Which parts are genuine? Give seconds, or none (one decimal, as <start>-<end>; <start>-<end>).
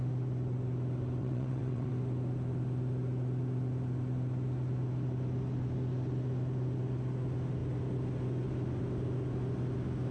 0.0-1.2; 1.9-10.1